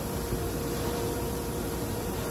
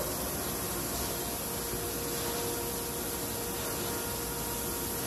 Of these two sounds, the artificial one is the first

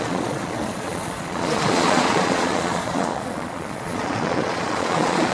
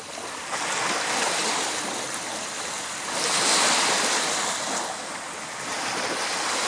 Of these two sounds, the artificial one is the first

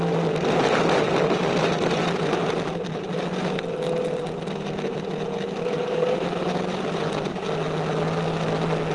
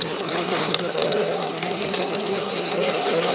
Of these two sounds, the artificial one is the second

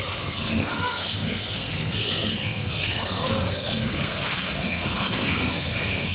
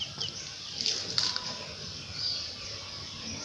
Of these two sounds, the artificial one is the first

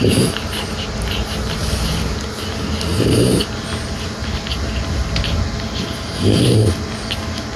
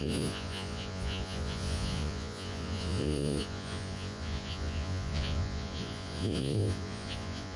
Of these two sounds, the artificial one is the second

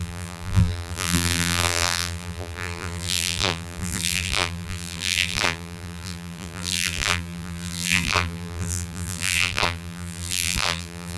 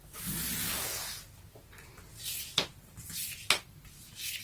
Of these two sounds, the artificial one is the first